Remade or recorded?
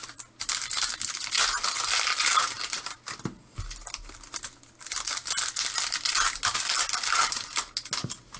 recorded